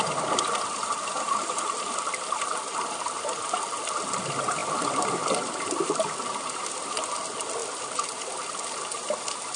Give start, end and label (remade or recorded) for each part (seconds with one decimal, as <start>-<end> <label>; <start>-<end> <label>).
0.0-9.6 recorded